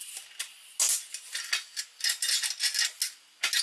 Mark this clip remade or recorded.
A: recorded